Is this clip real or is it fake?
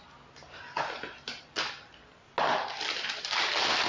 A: real